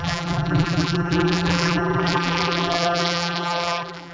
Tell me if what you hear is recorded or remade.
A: remade